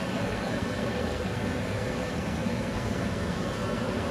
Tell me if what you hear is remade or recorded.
remade